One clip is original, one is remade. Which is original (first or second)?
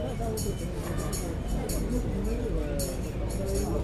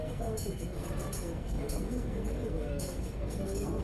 first